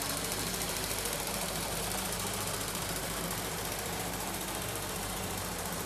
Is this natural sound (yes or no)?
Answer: no